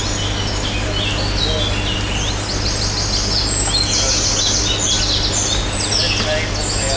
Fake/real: real